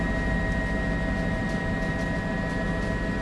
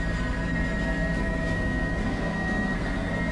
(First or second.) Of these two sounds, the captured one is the first